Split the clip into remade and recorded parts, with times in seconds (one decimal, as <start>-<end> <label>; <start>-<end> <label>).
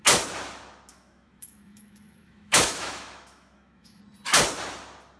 0.0-0.9 recorded; 0.9-4.0 remade; 4.0-5.2 recorded